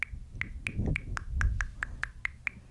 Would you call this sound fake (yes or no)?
no